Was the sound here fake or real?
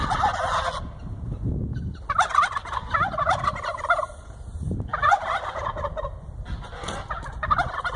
real